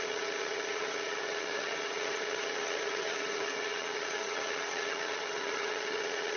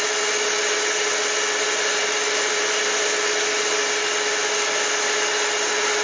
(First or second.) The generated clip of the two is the first